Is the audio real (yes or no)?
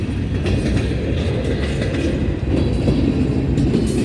yes